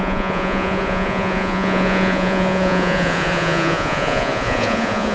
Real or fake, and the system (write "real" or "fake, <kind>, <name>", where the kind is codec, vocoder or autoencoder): fake, vocoder, Vocos